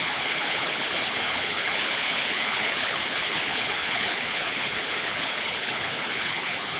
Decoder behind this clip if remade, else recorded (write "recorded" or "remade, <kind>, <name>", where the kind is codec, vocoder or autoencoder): remade, codec, HILCodec